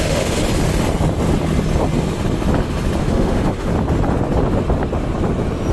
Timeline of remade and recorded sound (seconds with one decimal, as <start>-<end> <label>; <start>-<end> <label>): 0.0-0.4 remade; 0.4-3.0 recorded; 3.0-3.7 remade; 3.7-5.7 recorded